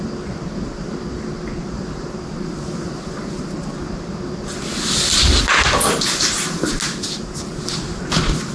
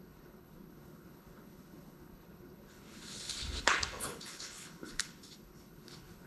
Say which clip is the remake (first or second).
second